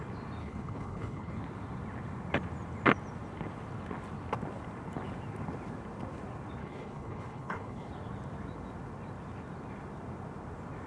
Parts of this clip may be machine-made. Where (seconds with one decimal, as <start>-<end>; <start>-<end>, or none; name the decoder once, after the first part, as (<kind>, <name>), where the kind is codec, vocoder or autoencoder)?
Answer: 0.4-1.4 (codec, HILCodec); 6.6-7.9